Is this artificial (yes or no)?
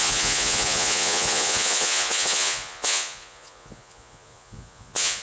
yes